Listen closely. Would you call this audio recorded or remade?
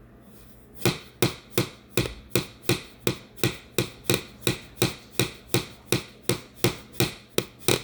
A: recorded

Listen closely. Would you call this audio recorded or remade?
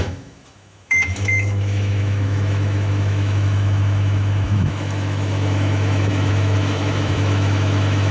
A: remade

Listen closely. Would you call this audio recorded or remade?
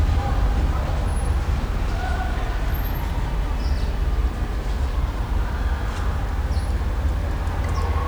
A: recorded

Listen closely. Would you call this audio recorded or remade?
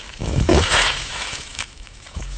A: remade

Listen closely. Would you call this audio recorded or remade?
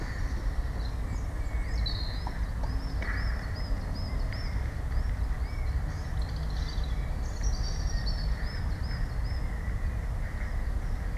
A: recorded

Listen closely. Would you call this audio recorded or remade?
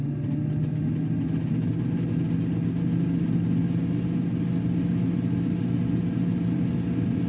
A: recorded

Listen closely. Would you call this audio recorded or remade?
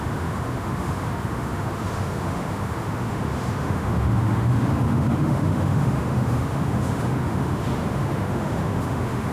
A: remade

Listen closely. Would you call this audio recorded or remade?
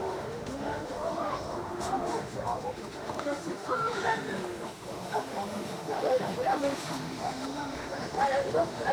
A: remade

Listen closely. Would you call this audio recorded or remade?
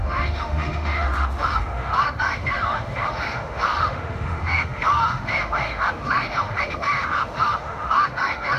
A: remade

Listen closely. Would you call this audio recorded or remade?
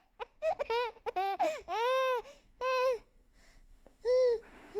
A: remade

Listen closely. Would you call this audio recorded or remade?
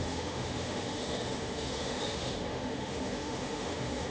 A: remade